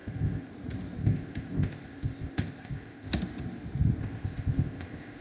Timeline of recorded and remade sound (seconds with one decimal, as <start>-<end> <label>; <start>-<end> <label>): 0.0-0.5 remade; 0.5-1.0 recorded; 1.0-3.1 remade; 3.1-4.0 recorded; 4.0-5.2 remade